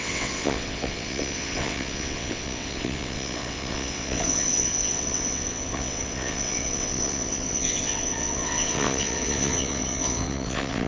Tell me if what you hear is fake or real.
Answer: fake